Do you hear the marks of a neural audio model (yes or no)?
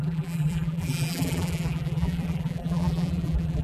yes